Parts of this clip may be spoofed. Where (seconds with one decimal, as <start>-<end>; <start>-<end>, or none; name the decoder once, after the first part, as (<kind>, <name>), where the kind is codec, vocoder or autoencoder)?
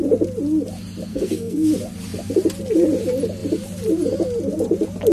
1.1-1.7 (codec, SNAC)